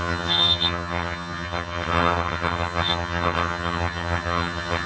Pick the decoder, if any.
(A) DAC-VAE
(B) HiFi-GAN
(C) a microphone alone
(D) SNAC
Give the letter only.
B